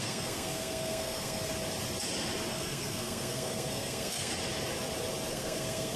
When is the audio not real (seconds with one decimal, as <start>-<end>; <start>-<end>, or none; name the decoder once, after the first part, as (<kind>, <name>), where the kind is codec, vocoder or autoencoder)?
0.0-1.5 (codec, SNAC); 2.5-4.3; 5.3-6.0